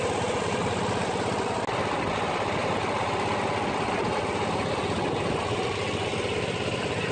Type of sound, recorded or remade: recorded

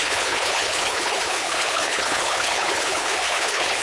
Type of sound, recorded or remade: remade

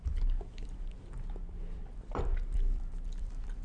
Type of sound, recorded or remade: remade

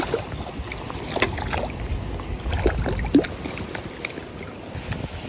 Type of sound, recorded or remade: recorded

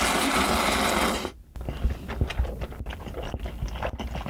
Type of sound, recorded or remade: recorded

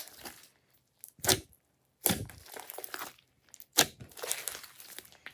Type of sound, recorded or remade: recorded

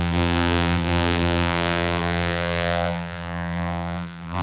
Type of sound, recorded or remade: remade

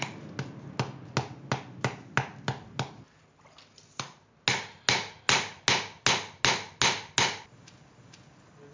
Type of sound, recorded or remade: recorded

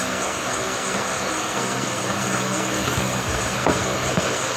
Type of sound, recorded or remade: remade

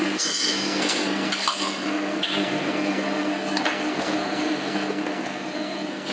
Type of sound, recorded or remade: remade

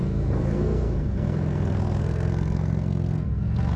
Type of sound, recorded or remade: remade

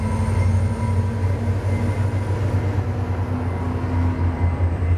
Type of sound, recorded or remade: recorded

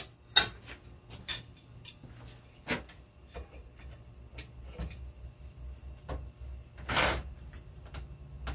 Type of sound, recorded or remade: recorded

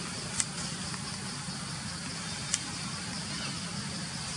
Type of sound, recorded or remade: recorded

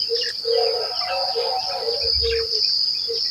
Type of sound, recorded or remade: recorded